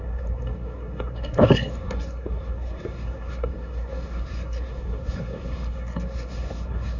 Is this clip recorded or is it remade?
remade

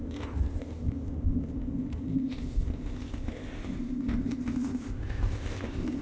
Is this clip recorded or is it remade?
remade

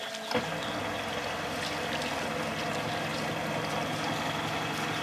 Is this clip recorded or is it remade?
recorded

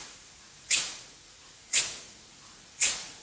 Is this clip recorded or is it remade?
remade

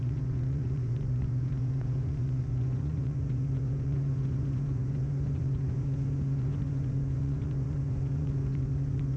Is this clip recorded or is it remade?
remade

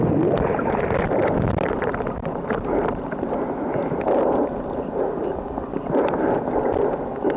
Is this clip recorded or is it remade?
recorded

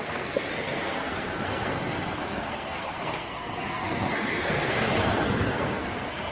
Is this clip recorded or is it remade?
remade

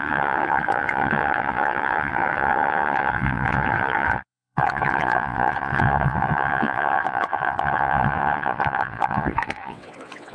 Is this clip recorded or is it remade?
remade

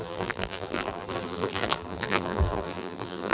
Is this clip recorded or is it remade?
remade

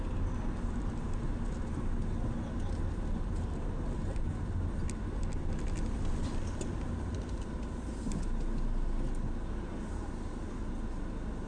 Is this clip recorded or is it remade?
recorded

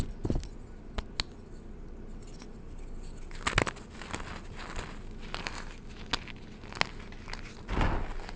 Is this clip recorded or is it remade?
recorded